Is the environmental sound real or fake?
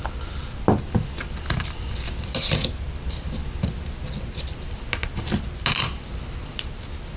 real